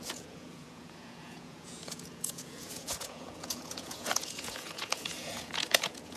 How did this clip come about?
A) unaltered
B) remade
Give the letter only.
B